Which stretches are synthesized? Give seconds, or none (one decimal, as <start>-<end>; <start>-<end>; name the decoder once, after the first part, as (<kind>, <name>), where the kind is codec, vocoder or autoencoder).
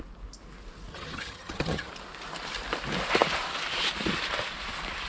0.9-1.9 (vocoder, HiFi-GAN)